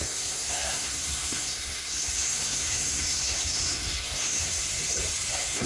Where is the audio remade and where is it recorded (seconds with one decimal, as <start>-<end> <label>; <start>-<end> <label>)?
0.0-4.6 remade; 4.6-5.3 recorded; 5.3-5.7 remade